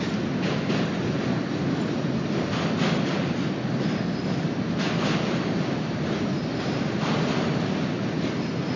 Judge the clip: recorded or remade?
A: recorded